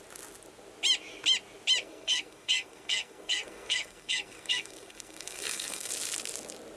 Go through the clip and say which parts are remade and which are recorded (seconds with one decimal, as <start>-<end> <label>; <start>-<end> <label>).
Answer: 0.0-1.8 recorded; 1.8-5.9 remade; 5.9-6.8 recorded